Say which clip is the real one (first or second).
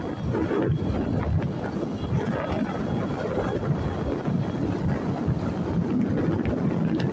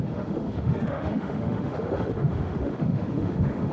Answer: first